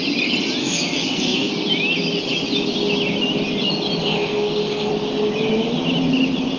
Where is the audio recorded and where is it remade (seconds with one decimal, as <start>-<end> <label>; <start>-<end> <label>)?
0.0-0.6 recorded; 0.6-1.5 remade; 1.5-4.0 recorded; 4.0-4.9 remade; 4.9-6.6 recorded

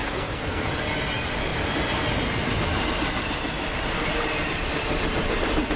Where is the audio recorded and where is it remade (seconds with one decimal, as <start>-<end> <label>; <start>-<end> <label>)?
0.0-0.7 remade; 0.7-5.8 recorded

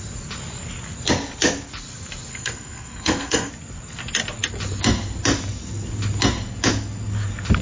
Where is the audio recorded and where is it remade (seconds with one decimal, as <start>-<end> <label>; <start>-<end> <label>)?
0.0-2.3 recorded; 2.3-3.5 remade; 3.5-7.6 recorded